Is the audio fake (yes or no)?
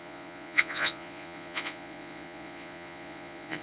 yes